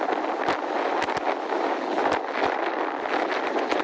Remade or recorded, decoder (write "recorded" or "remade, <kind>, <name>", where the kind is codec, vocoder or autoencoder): recorded